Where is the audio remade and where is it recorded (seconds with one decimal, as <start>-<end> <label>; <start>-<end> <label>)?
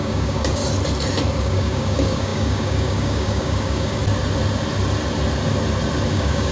0.0-0.6 remade; 0.6-1.4 recorded; 1.4-4.0 remade; 4.0-6.1 recorded; 6.1-6.5 remade